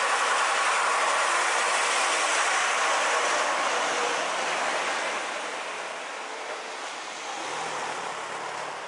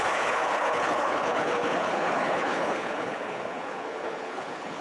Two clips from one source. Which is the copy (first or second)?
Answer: second